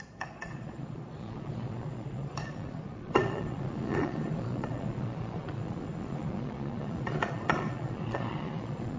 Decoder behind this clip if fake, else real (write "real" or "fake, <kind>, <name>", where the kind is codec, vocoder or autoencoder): fake, vocoder, Vocos